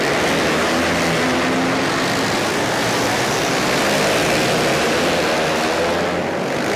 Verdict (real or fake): real